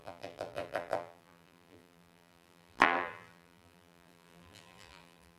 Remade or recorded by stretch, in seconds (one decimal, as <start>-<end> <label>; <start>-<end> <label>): 0.0-5.4 remade